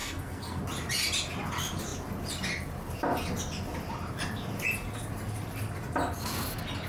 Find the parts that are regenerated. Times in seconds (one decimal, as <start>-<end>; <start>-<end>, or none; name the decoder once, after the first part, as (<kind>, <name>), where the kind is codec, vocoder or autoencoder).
0.0-0.6 (codec, SNAC)